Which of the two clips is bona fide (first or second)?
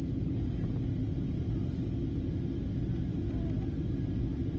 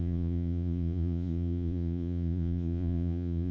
first